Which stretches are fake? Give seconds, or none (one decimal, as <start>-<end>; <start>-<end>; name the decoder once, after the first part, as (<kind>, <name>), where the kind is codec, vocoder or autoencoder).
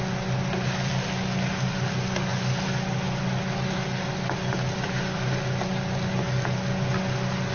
none